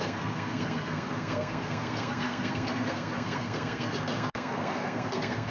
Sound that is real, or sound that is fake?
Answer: fake